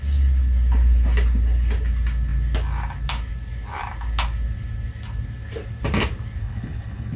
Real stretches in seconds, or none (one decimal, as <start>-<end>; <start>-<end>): 0.0-6.4